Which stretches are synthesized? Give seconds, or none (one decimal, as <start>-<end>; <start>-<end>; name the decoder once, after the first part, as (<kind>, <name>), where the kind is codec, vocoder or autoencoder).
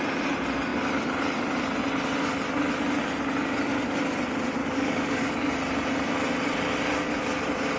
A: 4.6-5.5 (codec, DAC)